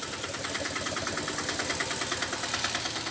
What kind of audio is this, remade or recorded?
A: recorded